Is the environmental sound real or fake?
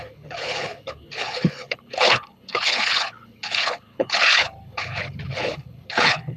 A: fake